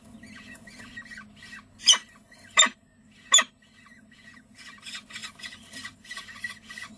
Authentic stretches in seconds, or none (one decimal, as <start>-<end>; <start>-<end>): 0.0-2.2; 2.8-5.2